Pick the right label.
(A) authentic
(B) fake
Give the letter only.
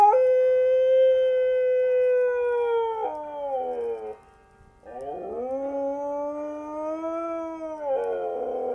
A